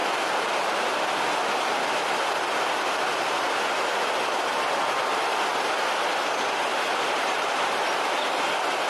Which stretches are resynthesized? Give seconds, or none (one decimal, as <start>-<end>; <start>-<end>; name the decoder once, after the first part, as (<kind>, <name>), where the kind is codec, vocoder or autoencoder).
6.7-7.7 (vocoder, BigVGAN v2)